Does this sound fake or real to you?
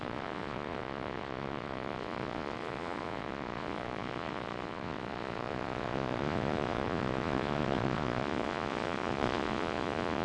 fake